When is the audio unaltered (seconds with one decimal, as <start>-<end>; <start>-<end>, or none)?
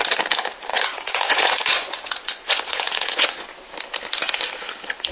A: 0.0-0.7; 3.5-5.1